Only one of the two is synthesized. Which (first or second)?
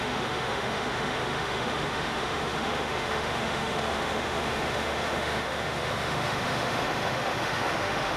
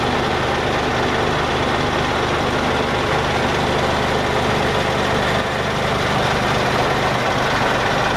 first